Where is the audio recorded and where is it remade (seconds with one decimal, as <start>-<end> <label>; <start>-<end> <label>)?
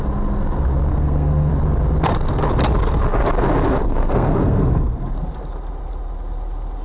0.0-0.9 recorded; 0.9-1.5 remade; 1.5-3.8 recorded; 3.8-5.1 remade; 5.1-6.8 recorded